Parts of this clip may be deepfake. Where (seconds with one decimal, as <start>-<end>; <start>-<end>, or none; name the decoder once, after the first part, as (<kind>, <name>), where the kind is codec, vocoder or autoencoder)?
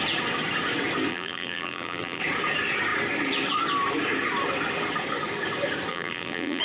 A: 1.1-2.2 (vocoder, BigVGAN v2); 5.9-6.6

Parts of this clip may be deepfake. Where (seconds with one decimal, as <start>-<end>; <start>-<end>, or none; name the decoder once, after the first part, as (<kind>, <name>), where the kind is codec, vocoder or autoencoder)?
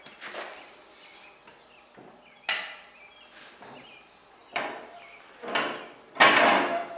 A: 4.4-6.1 (vocoder, BigVGAN v2)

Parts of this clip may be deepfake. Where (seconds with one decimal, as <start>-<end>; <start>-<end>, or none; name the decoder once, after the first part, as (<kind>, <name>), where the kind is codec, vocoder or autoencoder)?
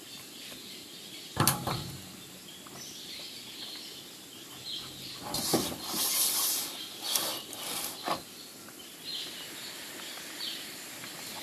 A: 1.3-2.0 (vocoder, BigVGAN v2)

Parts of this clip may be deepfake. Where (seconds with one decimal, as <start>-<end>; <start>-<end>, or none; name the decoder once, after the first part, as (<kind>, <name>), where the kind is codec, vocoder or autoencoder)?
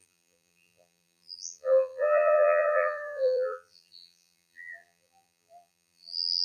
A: 0.0-6.4 (vocoder, BigVGAN v2)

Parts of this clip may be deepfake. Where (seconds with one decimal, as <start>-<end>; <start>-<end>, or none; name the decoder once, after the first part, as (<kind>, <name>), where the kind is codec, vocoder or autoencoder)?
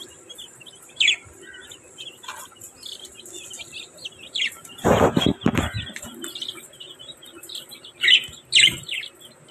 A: none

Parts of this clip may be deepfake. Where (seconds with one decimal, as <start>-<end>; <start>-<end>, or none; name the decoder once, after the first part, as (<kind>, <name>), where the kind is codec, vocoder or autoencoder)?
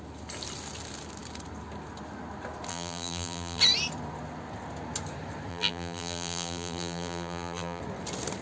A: 2.7-3.6 (vocoder, BigVGAN v2); 5.5-7.8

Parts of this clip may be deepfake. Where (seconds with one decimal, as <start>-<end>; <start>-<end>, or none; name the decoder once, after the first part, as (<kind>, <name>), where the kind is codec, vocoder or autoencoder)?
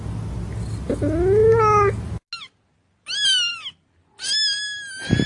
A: none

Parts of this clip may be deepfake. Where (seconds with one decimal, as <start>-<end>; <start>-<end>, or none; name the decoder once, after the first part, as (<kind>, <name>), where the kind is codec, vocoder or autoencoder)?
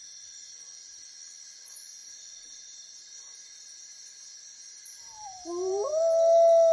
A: 2.0-6.0 (vocoder, BigVGAN v2)